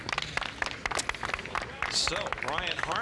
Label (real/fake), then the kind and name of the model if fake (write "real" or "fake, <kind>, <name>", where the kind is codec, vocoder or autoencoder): real